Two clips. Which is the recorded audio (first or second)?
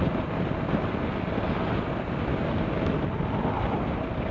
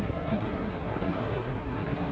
first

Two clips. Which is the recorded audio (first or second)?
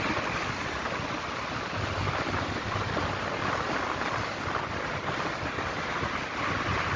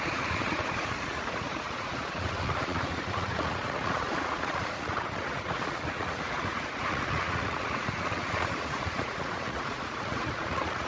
first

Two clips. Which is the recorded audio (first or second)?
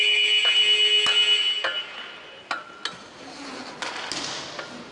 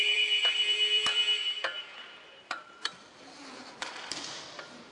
first